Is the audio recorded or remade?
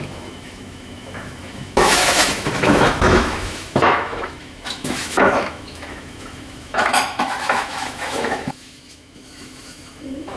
remade